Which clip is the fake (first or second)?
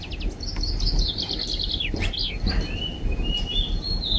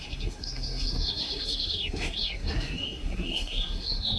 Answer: second